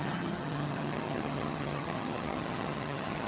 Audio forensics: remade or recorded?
remade